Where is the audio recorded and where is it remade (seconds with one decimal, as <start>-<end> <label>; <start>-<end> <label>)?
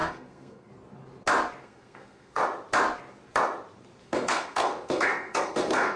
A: 0.0-0.7 remade; 0.7-1.6 recorded; 1.6-2.4 remade; 2.4-4.0 recorded; 4.0-6.0 remade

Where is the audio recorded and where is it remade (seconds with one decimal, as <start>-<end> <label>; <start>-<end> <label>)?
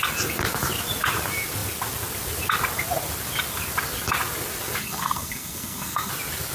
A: 0.0-4.8 recorded; 4.8-6.1 remade; 6.1-6.5 recorded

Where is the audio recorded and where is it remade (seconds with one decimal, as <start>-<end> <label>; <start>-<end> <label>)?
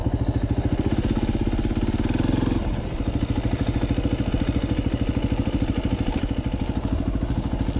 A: 0.0-7.8 recorded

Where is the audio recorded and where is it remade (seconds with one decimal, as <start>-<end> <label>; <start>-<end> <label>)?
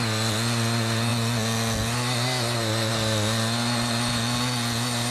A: 0.0-5.1 recorded